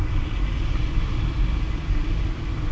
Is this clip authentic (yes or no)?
yes